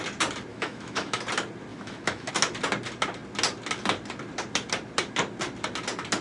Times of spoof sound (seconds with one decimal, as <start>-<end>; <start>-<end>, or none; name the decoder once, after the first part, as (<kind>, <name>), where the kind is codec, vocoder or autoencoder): 0.5-1.2 (autoencoder, DAC-VAE); 1.7-2.3